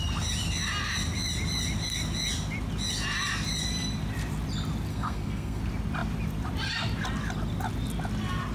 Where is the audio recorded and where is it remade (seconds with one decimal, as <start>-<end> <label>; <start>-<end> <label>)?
0.0-4.9 recorded; 4.9-5.6 remade; 5.6-8.5 recorded

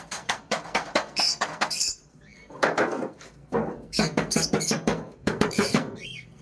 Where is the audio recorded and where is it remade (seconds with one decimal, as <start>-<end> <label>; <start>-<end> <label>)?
0.0-6.4 remade

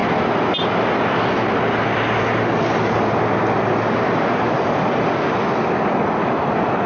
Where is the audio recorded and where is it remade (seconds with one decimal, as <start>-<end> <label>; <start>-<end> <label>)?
0.0-6.9 recorded

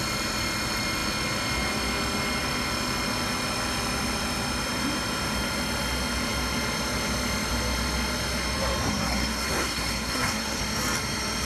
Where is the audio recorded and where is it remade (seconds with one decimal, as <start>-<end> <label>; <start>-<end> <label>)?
0.0-8.9 recorded; 8.9-10.6 remade; 10.6-11.5 recorded

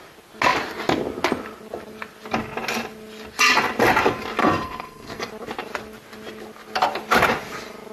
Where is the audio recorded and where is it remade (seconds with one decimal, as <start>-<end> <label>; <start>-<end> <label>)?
0.0-4.4 recorded; 4.4-5.3 remade; 5.3-7.9 recorded

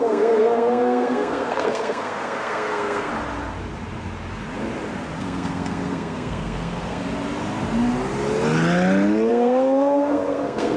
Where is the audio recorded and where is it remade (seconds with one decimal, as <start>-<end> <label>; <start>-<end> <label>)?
0.0-3.1 remade; 3.1-5.2 recorded; 5.2-7.0 remade; 7.0-9.3 recorded; 9.3-10.8 remade